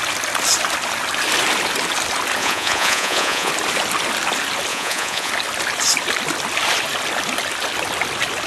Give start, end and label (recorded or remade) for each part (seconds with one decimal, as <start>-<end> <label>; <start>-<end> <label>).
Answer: 0.0-2.4 recorded; 2.4-3.5 remade; 3.5-4.7 recorded; 4.7-5.3 remade; 5.3-8.5 recorded